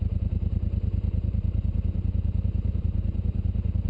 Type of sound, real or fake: fake